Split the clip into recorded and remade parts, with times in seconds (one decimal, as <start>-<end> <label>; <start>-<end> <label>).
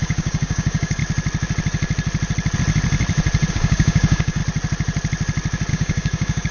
0.0-1.0 remade; 1.0-3.5 recorded; 3.5-4.4 remade; 4.4-5.7 recorded; 5.7-6.5 remade